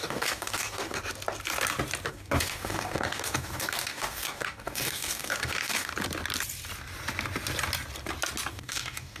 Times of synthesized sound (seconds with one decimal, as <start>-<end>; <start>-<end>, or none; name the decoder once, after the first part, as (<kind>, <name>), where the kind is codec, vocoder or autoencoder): 0.0-1.0 (codec, DAC); 2.1-5.9; 8.5-9.2